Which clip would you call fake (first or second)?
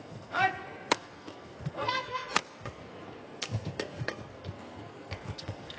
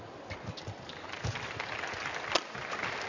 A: first